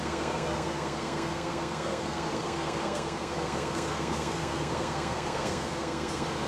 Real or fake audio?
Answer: fake